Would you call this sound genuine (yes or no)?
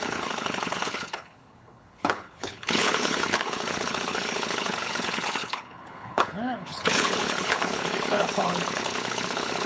no